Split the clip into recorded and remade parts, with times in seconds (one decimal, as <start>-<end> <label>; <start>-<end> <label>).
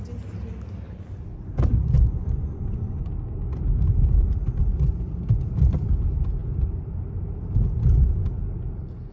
0.0-2.2 recorded; 2.2-3.0 remade; 3.0-9.1 recorded